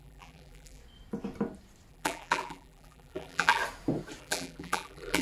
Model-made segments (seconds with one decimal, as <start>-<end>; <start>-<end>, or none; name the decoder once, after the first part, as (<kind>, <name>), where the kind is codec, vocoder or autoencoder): 0.0-0.8 (vocoder, BigVGAN v2); 1.9-3.6; 4.2-5.2